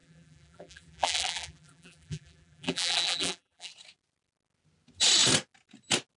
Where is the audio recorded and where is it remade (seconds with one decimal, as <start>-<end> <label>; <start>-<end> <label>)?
0.0-3.7 remade; 3.7-6.2 recorded